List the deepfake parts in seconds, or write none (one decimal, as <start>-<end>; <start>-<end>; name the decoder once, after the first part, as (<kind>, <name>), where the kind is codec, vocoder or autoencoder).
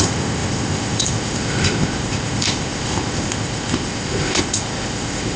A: 0.0-5.4 (codec, ZipCodec)